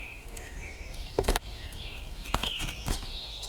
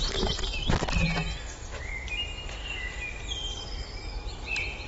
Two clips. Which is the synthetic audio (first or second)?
first